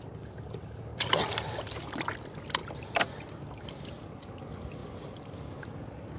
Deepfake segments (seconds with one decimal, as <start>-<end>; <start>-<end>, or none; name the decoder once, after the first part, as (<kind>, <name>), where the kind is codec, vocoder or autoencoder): 2.6-3.9 (vocoder, BigVGAN v2)